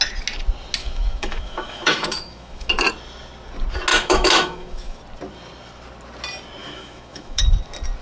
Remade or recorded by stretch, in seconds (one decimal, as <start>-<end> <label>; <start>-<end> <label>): 0.0-0.8 recorded; 0.8-2.7 remade; 2.7-3.9 recorded; 3.9-5.0 remade; 5.0-6.6 recorded; 6.6-7.4 remade; 7.4-8.0 recorded